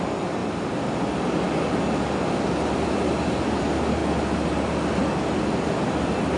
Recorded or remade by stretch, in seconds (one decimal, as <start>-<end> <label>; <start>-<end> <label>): 0.0-6.4 recorded